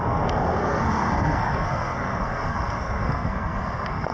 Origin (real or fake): fake